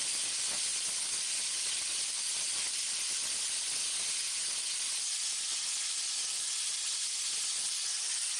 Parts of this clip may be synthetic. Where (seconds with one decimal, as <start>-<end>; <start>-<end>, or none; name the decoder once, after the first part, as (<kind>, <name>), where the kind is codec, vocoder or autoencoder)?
none

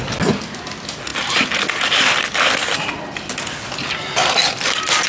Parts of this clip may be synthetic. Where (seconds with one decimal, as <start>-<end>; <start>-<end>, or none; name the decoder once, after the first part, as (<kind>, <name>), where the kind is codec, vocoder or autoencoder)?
none

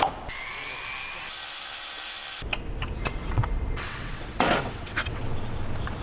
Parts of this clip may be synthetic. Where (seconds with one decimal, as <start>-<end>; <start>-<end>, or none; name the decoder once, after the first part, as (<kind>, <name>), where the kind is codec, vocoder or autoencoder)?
3.2-5.2 (vocoder, WaveNeXt)

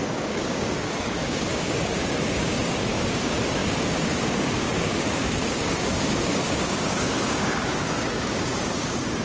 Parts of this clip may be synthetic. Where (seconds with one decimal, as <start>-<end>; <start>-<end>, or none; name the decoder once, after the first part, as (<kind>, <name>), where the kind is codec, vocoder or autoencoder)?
0.0-9.2 (codec, DAC)

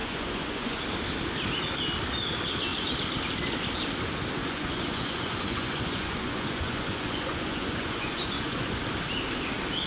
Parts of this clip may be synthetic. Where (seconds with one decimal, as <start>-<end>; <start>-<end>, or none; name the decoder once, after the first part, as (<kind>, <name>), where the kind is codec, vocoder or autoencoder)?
0.0-0.8 (vocoder, Vocos); 4.4-8.8

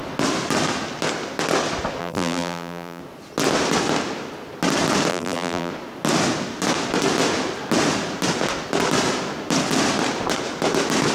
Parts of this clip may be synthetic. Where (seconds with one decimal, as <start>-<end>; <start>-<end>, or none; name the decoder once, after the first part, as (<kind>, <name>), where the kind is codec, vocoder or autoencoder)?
2.0-3.0 (vocoder, BigVGAN v2); 5.1-5.7